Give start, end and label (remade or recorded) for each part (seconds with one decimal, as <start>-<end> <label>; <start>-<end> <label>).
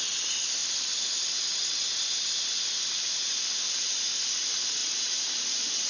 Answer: 0.0-4.8 recorded; 4.8-5.9 remade